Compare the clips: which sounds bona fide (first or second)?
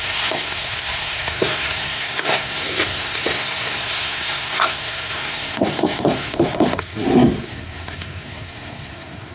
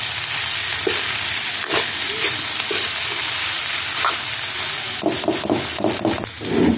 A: second